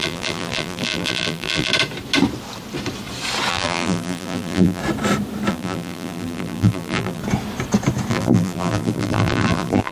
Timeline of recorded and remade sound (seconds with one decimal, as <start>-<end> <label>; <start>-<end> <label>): 0.0-1.7 remade; 1.7-3.5 recorded; 3.5-4.8 remade; 4.8-5.5 recorded; 5.5-7.2 remade; 7.2-8.1 recorded; 8.1-9.9 remade